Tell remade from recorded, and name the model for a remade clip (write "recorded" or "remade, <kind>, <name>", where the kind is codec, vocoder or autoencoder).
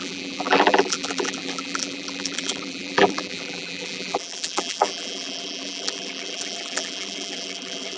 remade, vocoder, BigVGAN v2